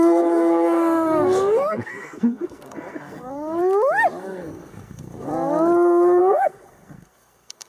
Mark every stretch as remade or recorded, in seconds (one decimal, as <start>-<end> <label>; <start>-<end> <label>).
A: 0.0-3.6 remade; 3.6-4.2 recorded; 4.2-5.3 remade; 5.3-6.2 recorded; 6.2-7.7 remade